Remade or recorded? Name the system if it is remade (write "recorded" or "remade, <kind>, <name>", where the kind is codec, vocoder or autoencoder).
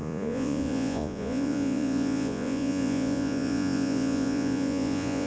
remade, vocoder, Vocos